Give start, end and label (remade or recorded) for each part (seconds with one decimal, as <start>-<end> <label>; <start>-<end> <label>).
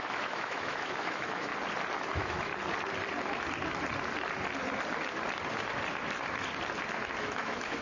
0.0-1.5 remade; 1.5-2.0 recorded; 2.0-2.5 remade; 2.5-7.2 recorded; 7.2-7.8 remade